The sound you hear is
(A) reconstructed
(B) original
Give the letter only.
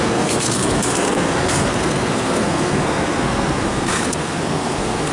A